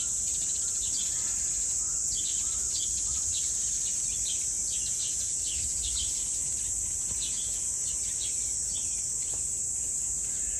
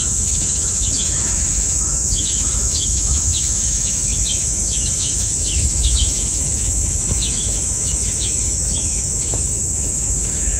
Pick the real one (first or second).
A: first